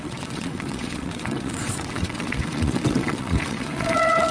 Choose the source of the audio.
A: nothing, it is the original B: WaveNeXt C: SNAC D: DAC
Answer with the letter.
B